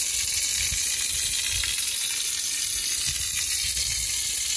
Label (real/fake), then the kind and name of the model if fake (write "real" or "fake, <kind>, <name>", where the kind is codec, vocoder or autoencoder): real